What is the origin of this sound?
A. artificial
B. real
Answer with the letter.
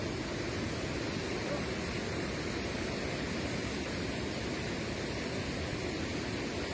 B